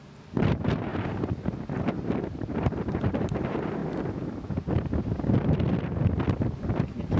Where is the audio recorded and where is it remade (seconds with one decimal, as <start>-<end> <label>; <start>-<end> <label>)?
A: 0.0-3.8 remade; 3.8-6.8 recorded; 6.8-7.2 remade